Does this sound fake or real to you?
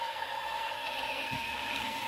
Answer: fake